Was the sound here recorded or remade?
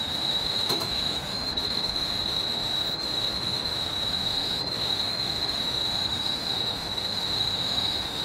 remade